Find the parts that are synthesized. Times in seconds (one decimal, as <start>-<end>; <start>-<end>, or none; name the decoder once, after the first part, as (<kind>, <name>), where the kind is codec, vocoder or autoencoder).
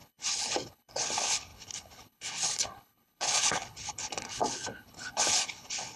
0.0-6.0 (codec, HILCodec)